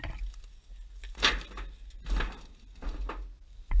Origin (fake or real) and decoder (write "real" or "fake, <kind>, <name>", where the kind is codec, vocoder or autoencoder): real